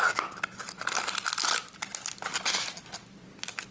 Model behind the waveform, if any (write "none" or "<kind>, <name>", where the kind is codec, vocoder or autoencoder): none